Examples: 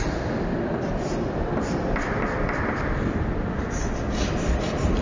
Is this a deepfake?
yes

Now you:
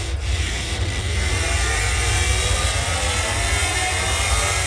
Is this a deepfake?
no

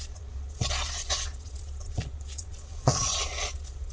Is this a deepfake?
yes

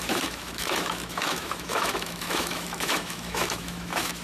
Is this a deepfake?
yes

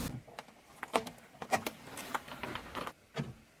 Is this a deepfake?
no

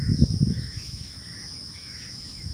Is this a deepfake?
yes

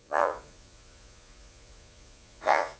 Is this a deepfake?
yes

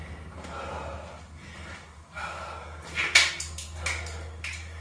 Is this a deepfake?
no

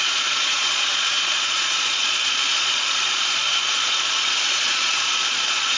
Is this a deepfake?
yes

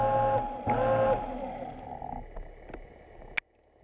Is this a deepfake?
no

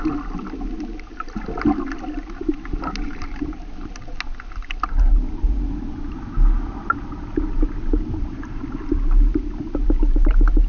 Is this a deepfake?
no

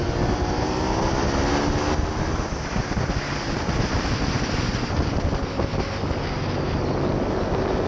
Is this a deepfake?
no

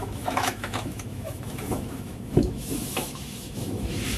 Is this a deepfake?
yes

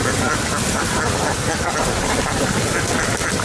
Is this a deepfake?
no